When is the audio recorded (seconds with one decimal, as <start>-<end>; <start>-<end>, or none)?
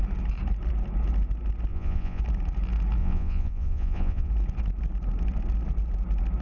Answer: 0.0-1.7; 2.2-3.0; 4.3-6.4